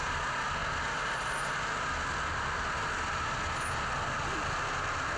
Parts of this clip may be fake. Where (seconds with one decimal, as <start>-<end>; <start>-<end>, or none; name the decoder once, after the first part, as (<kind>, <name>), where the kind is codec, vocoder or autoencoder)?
none